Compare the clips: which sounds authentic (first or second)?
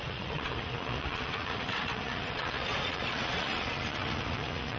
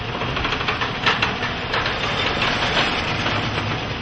second